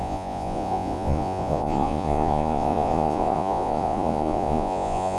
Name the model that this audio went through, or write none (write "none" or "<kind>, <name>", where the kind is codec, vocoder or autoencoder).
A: vocoder, Vocos